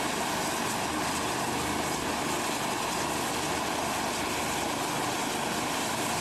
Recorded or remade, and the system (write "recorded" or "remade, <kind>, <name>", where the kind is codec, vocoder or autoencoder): recorded